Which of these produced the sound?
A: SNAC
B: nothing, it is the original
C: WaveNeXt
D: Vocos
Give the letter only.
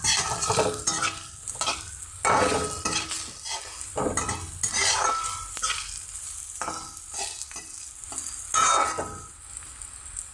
B